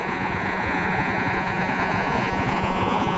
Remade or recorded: remade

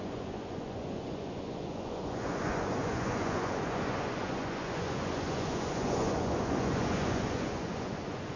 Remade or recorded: remade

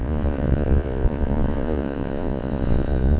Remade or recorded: remade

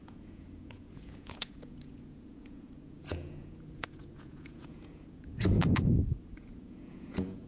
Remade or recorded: remade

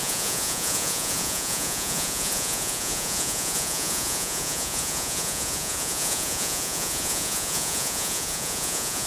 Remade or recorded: remade